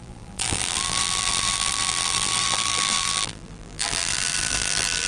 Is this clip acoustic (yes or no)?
no